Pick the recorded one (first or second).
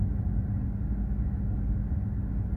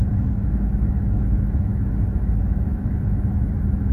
first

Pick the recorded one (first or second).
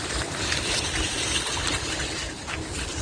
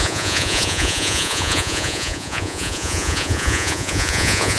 first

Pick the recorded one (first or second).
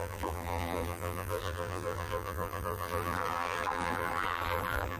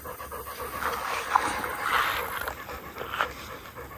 second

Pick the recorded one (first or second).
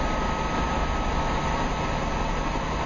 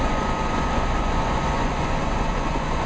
first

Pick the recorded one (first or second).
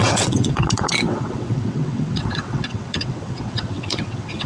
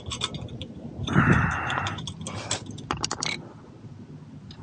second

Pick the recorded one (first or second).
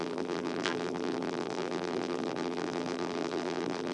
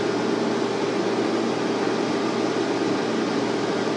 second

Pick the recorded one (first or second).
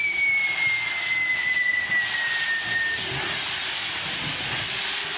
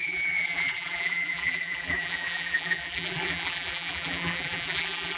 first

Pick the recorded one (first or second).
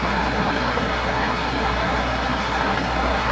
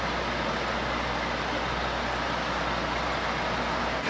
second